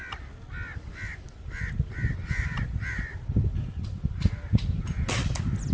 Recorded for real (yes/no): yes